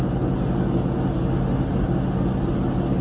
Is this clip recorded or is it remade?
recorded